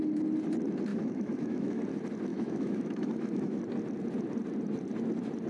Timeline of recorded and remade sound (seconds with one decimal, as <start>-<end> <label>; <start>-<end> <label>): 0.0-0.9 recorded; 0.9-1.8 remade; 1.8-2.3 recorded; 2.3-3.6 remade; 3.6-5.5 recorded